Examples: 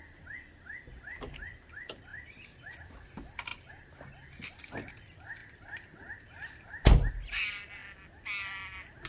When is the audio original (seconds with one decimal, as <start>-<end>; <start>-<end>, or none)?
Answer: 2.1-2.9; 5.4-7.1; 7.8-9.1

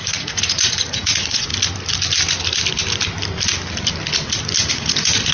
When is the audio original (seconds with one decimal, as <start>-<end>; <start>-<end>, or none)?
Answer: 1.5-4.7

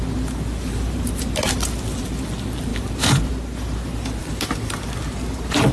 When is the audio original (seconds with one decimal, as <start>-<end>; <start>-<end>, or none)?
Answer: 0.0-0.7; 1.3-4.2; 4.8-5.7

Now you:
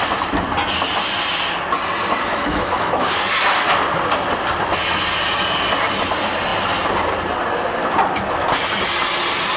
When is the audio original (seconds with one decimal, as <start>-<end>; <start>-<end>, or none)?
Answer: 0.0-2.3; 3.2-9.6

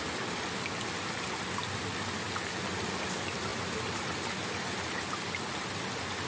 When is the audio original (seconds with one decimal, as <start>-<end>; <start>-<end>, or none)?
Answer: 0.0-6.3